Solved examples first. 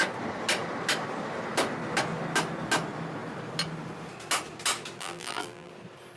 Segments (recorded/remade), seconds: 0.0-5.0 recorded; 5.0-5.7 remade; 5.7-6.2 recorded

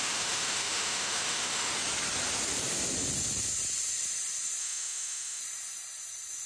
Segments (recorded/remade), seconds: 0.0-1.7 remade; 1.7-4.6 recorded; 4.6-5.4 remade; 5.4-6.5 recorded

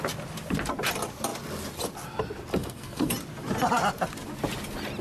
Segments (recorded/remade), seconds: 0.0-2.6 recorded; 2.6-3.1 remade; 3.1-5.0 recorded

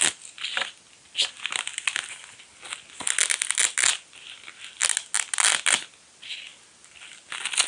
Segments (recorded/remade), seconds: 0.0-7.7 recorded